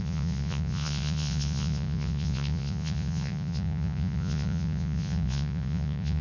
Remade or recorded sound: remade